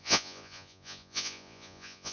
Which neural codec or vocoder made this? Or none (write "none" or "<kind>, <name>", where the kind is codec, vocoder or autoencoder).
vocoder, Vocos